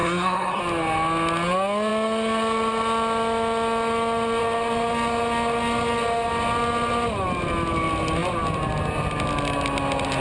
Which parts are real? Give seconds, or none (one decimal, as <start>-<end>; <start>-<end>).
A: 0.6-10.2